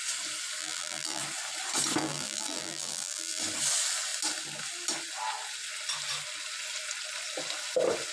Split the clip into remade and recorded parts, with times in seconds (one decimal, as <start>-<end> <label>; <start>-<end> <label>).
0.0-0.6 recorded; 0.6-1.2 remade; 1.2-2.0 recorded; 2.0-3.4 remade; 3.4-8.1 recorded